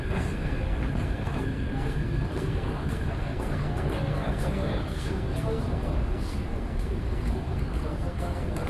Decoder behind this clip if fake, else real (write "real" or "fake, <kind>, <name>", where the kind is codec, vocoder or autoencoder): fake, codec, SNAC